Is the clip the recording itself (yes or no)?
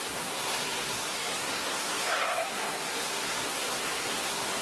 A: no